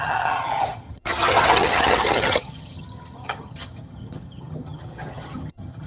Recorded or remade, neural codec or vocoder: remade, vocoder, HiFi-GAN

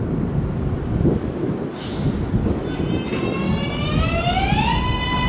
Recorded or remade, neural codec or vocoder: recorded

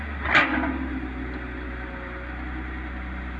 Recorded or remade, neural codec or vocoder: recorded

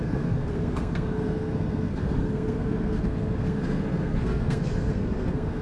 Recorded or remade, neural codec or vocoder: remade, codec, SNAC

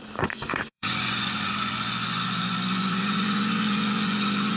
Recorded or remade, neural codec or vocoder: remade, vocoder, Vocos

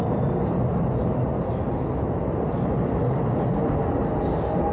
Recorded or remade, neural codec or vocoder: recorded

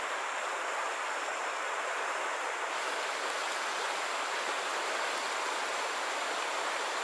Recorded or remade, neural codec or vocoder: recorded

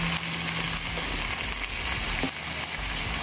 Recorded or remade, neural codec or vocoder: recorded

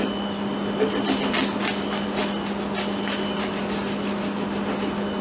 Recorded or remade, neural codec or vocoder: recorded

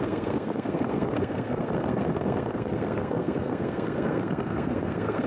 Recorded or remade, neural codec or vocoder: remade, codec, SNAC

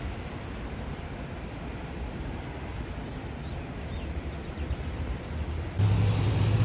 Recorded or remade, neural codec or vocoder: recorded